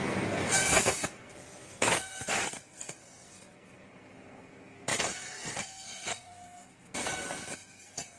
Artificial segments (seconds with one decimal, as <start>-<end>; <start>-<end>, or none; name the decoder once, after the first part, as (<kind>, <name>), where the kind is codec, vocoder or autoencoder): 0.0-8.2 (codec, SNAC)